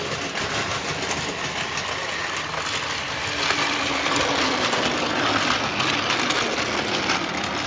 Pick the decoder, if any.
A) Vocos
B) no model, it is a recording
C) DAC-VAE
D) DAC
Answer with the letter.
B